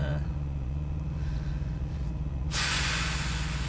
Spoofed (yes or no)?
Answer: yes